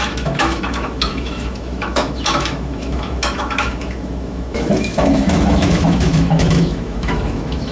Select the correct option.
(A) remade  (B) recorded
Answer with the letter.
A